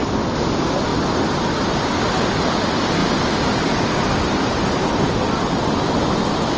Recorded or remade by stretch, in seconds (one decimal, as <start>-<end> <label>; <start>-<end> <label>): 0.0-6.6 recorded